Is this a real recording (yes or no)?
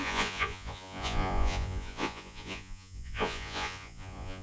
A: no